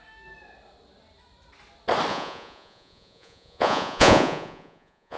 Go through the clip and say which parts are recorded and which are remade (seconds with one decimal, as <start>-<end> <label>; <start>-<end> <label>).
0.0-2.1 recorded; 2.1-5.2 remade